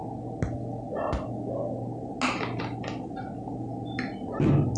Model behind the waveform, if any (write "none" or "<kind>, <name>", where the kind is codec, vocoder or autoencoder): none